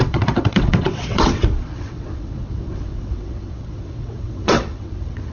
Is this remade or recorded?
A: remade